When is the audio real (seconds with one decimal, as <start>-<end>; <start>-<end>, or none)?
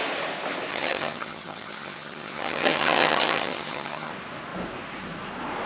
0.0-0.7; 4.1-5.7